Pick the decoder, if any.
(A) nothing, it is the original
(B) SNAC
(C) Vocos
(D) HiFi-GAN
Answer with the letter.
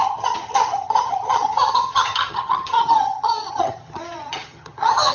D